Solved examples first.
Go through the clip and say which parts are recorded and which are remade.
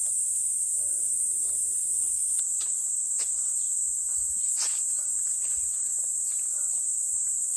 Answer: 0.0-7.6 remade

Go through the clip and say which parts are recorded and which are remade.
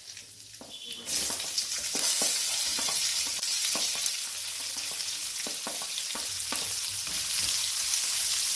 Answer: 0.0-3.1 recorded; 3.1-4.6 remade; 4.6-8.6 recorded